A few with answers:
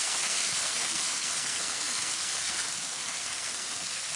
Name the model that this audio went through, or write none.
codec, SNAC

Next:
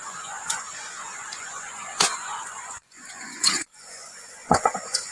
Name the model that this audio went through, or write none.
vocoder, Vocos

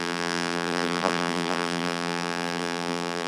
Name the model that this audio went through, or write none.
vocoder, BigVGAN v2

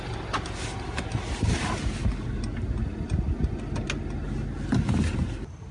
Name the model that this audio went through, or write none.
none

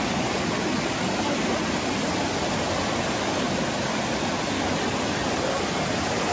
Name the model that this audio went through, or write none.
none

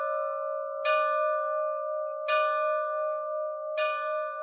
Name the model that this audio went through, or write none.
none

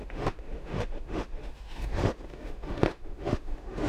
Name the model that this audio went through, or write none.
autoencoder, DAC-VAE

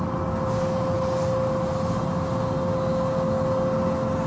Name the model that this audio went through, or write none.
none